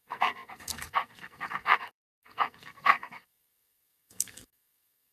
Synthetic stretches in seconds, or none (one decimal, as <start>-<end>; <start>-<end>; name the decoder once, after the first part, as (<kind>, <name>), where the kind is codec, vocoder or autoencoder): 0.0-5.1 (codec, SNAC)